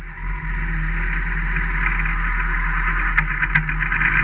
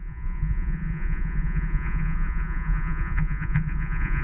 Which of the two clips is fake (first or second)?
second